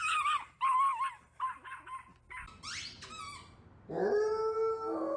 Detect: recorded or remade recorded